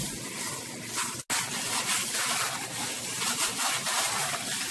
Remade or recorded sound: recorded